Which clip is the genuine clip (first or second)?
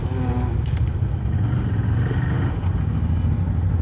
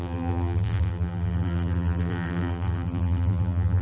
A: first